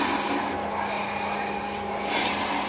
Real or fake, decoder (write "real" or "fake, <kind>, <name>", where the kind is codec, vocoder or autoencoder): real